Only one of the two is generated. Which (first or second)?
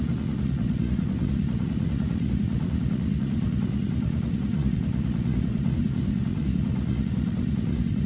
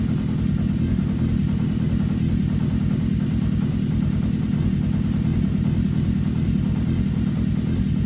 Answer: first